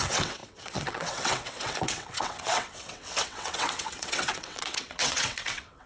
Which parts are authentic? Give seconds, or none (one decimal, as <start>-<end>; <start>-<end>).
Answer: none